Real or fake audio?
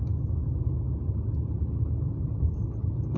real